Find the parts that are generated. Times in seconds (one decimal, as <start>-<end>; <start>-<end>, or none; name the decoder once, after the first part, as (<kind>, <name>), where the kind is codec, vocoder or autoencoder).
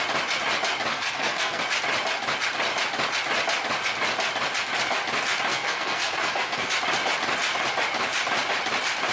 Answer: 0.9-1.6 (codec, SNAC); 5.5-6.7